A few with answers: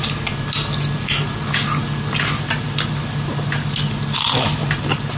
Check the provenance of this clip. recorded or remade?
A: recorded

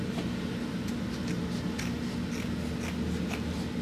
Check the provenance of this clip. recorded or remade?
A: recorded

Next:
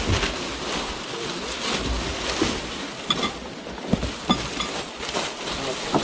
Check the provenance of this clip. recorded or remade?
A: recorded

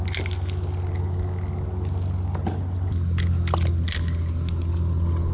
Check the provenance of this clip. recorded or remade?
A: recorded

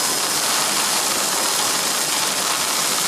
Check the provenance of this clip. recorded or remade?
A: recorded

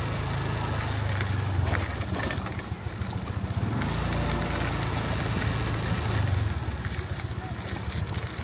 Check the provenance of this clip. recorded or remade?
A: recorded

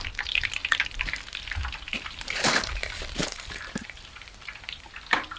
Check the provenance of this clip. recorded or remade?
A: recorded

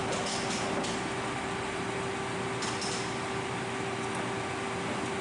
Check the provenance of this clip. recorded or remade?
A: recorded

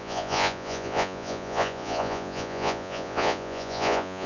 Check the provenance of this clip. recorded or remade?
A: remade